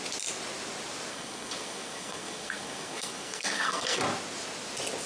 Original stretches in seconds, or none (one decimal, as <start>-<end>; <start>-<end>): 0.0-1.1; 4.0-5.1